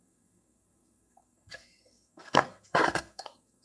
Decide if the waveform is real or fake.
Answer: fake